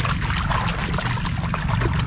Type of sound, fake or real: real